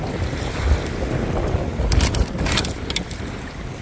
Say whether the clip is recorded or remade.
recorded